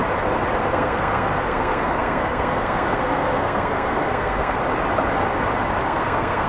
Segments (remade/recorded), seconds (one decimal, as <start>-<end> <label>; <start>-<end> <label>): 0.0-0.6 recorded; 0.6-4.6 remade; 4.6-5.8 recorded; 5.8-6.5 remade